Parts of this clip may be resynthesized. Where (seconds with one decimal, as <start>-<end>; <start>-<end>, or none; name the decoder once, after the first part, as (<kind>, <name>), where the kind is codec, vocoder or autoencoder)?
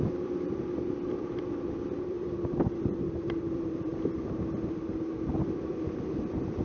0.0-3.9 (vocoder, BigVGAN v2); 5.3-6.6